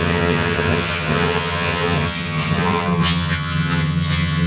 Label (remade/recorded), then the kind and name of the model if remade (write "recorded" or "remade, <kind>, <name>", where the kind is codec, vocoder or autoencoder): remade, vocoder, HiFi-GAN